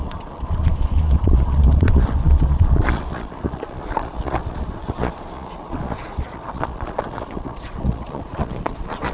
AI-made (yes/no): yes